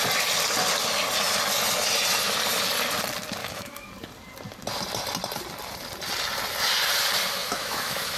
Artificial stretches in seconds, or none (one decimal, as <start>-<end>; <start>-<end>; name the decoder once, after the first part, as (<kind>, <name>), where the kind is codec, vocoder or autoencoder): 3.4-3.9 (autoencoder, DAC-VAE); 7.4-8.2